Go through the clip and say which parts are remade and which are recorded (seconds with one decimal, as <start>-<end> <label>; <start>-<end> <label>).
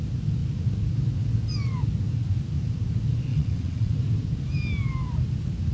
0.0-3.3 recorded; 3.3-3.9 remade; 3.9-5.7 recorded